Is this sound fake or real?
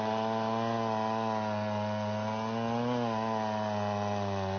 real